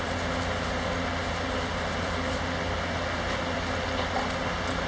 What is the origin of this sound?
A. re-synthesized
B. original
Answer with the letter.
B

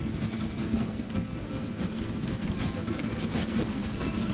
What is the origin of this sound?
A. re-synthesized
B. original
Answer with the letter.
A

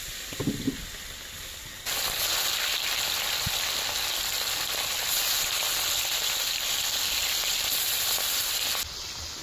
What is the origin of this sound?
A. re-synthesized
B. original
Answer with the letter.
B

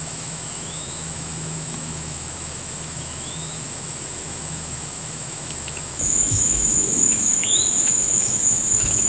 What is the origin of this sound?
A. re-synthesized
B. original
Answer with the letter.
A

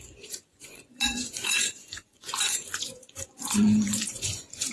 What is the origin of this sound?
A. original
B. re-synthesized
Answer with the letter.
B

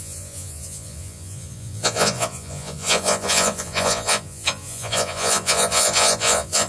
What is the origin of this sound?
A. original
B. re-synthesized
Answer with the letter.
B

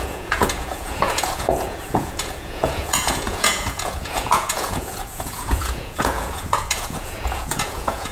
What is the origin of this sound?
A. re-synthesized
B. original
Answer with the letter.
A